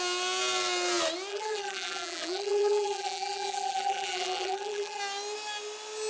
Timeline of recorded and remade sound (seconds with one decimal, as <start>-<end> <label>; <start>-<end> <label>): 0.0-1.3 recorded; 1.3-5.0 remade; 5.0-6.1 recorded